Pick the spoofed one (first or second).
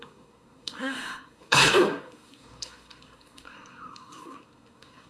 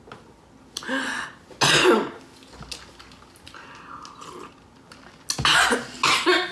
first